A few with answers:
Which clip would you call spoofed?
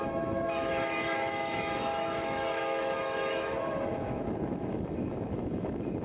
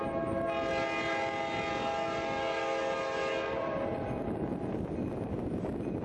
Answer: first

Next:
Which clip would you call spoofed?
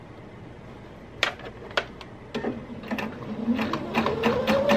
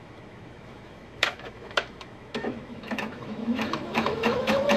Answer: second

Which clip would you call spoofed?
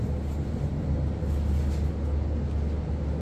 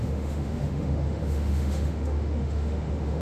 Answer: second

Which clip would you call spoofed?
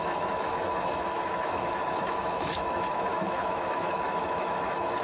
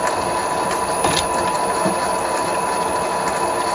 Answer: first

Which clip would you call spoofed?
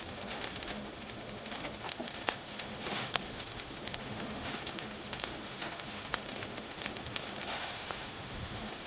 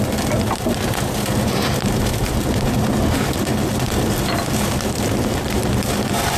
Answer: first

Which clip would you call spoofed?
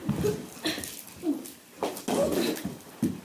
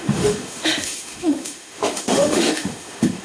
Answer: second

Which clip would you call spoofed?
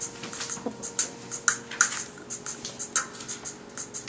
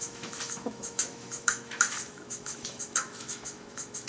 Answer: second